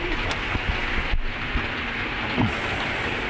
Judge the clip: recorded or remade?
recorded